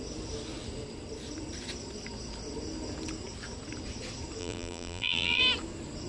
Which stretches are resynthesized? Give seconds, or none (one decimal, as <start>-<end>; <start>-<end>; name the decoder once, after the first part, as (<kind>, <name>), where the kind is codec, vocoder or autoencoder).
4.4-5.4 (vocoder, BigVGAN v2)